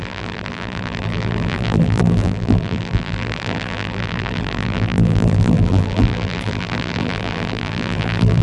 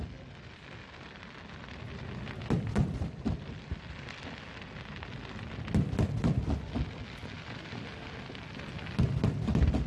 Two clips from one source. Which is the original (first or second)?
second